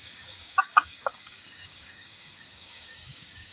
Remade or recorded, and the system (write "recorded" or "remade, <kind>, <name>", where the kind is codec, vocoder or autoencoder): remade, codec, DAC